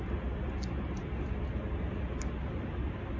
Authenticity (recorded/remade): recorded